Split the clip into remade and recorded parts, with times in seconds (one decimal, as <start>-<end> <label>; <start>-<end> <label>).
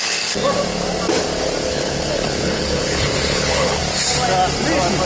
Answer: 0.0-1.7 recorded; 1.7-3.8 remade; 3.8-5.1 recorded